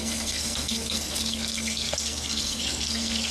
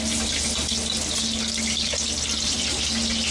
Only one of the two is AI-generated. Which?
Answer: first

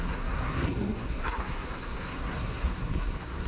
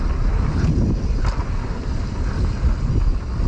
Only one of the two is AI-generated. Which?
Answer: first